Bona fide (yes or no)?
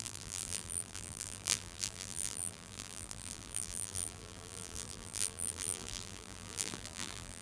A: no